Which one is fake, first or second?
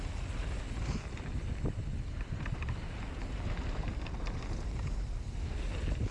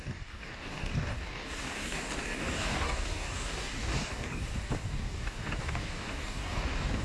second